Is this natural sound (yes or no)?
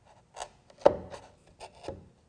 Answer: yes